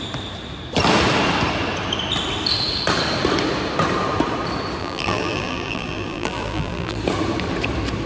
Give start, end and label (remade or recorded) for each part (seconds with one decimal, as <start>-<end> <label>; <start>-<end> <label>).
0.0-4.8 recorded; 4.8-7.0 remade; 7.0-8.1 recorded